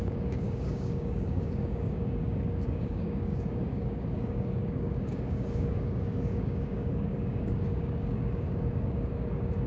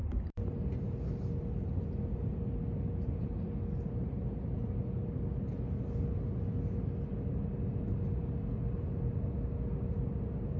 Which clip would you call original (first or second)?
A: second